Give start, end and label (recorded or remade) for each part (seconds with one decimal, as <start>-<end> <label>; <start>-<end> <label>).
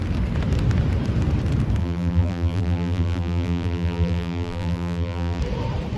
0.0-1.8 recorded; 1.8-5.4 remade; 5.4-6.0 recorded